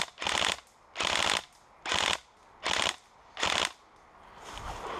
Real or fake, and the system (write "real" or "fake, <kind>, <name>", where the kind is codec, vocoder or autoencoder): real